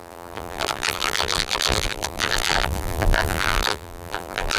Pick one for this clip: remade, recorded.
remade